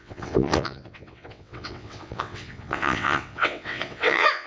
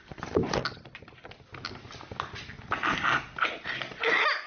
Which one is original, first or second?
second